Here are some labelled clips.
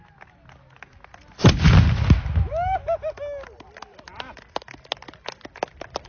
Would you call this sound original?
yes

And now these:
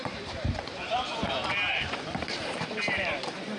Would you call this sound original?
no